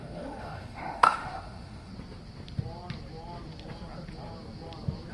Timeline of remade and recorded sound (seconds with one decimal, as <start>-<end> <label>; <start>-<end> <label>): 0.0-1.9 remade; 1.9-5.1 recorded